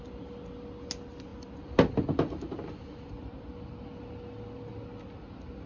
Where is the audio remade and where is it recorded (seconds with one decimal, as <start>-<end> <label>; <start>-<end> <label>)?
0.0-5.7 recorded